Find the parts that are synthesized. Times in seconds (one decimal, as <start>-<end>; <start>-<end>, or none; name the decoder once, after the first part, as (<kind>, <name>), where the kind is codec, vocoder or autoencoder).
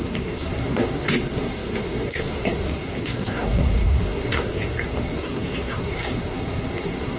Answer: 0.0-7.2 (codec, SNAC)